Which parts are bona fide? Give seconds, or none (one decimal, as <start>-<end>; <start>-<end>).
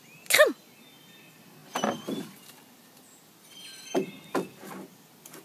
0.0-5.4